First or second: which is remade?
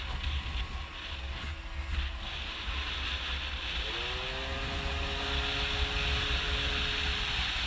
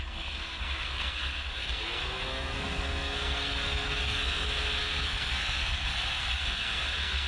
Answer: second